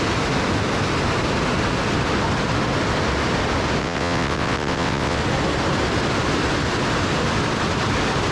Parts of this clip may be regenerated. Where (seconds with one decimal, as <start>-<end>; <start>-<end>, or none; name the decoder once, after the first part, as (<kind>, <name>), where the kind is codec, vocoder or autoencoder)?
3.8-5.2 (vocoder, WaveNeXt)